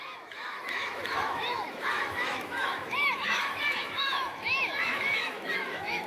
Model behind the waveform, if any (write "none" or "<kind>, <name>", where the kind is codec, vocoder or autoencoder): autoencoder, DAC-VAE